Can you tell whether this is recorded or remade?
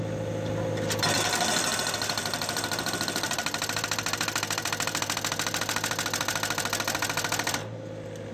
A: recorded